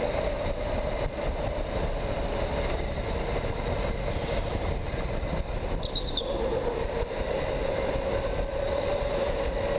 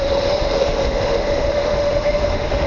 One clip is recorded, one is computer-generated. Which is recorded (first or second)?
first